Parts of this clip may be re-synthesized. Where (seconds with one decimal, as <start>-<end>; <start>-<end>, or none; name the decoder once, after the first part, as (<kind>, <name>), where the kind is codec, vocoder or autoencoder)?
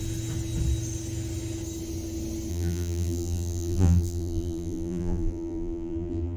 2.5-6.4 (vocoder, BigVGAN v2)